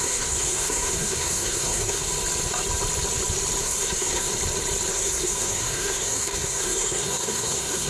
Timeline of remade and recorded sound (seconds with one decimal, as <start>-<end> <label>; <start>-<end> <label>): 0.0-2.1 remade; 2.1-3.6 recorded; 3.6-4.3 remade; 4.3-4.9 recorded; 4.9-7.9 remade